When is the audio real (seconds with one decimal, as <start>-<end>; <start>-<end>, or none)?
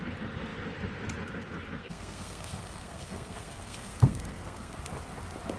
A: 0.0-1.8; 4.8-5.6